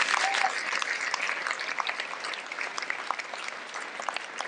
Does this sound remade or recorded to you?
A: recorded